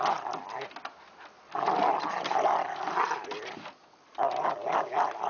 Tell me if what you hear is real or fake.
real